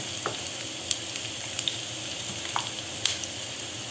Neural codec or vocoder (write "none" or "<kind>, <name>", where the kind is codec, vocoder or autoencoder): none